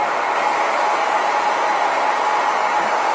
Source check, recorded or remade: recorded